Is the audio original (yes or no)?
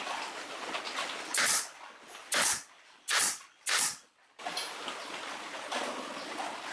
yes